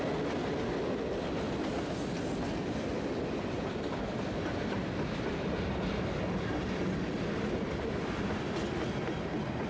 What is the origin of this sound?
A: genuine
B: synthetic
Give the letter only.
A